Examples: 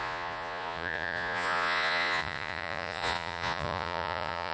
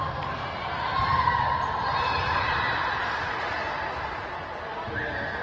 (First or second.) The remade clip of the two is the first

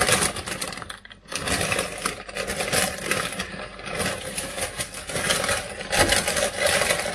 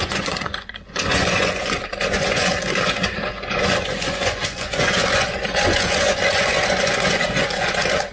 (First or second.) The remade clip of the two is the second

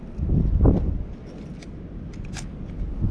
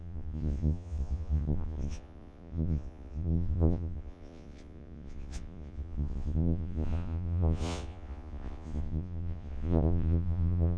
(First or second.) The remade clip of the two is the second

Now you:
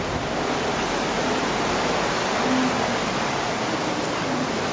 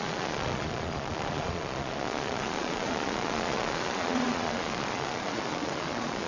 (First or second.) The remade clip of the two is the second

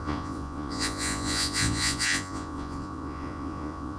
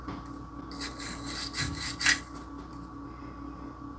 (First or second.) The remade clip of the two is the first